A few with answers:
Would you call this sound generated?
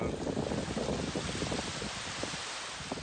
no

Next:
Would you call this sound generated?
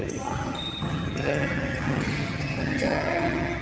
yes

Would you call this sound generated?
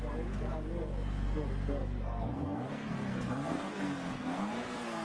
yes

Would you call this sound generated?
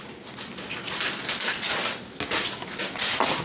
no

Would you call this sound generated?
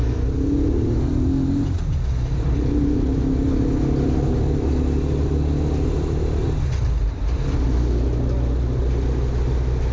no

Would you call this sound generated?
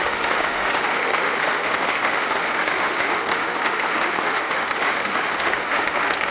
yes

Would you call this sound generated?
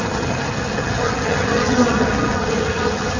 yes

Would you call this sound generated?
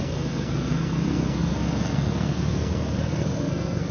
yes